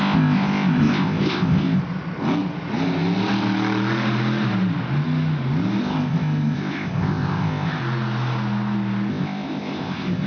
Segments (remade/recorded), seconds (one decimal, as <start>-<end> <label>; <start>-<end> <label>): 0.0-1.8 remade; 1.8-5.8 recorded; 5.8-7.8 remade; 7.8-9.1 recorded; 9.1-10.3 remade